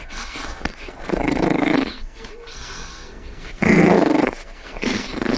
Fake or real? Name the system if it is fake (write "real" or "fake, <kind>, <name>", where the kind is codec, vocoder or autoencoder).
fake, codec, SNAC